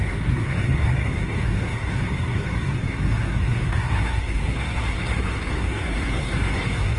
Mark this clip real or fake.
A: fake